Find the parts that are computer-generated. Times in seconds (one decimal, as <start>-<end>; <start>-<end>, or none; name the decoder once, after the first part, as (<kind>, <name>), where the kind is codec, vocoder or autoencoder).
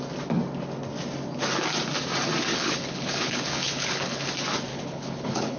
2.5-4.3 (codec, HILCodec); 4.7-5.6